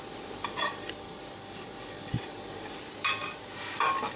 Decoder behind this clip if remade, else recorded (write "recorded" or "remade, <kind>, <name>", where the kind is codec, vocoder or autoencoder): remade, vocoder, BigVGAN v2